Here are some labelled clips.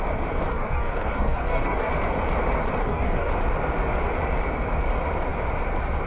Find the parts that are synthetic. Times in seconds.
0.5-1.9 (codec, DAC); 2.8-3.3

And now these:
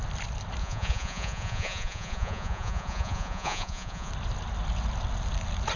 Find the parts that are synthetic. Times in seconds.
0.6-4.1 (vocoder, Vocos)

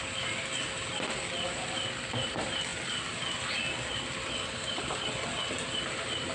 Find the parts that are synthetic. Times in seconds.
none

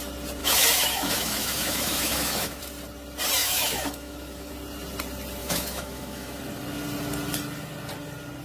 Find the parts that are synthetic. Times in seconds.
0.4-2.6 (autoencoder, DAC-VAE); 3.4-4.5; 5.4-6.4

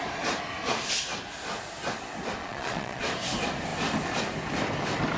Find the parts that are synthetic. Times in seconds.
2.4-3.0 (vocoder, Vocos)

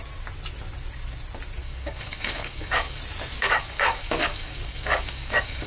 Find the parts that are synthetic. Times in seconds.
1.6-3.0 (codec, DAC); 3.4-5.7